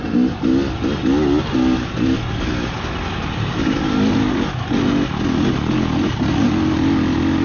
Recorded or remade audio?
recorded